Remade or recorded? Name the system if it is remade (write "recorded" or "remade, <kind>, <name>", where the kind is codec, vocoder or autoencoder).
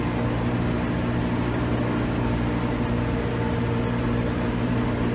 recorded